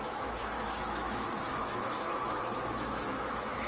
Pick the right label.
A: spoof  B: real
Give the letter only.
A